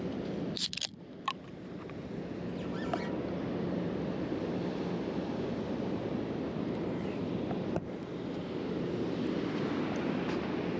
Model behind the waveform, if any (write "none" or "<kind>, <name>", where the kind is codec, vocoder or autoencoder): none